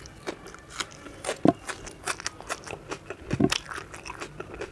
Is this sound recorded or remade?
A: recorded